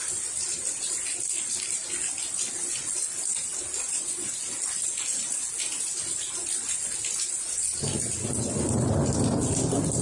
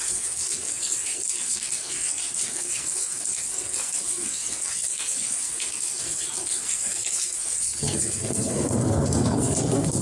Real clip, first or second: first